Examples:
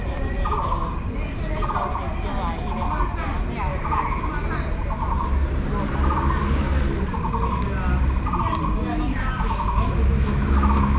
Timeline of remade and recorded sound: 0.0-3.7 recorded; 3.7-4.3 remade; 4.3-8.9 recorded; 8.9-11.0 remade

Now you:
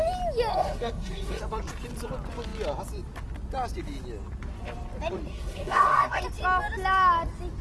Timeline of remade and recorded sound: 0.0-0.5 recorded; 0.5-1.4 remade; 1.4-5.3 recorded; 5.3-6.2 remade; 6.2-7.6 recorded

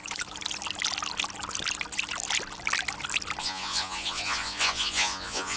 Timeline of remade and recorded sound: 0.0-3.4 recorded; 3.4-5.6 remade